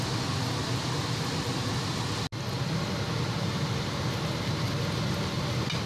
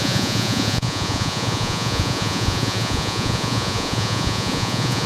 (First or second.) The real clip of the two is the first